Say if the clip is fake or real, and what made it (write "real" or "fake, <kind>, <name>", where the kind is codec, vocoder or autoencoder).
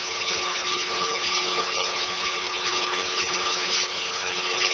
fake, codec, HILCodec